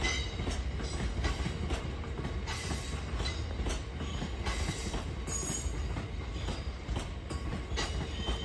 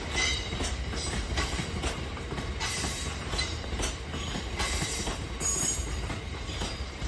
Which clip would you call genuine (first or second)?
first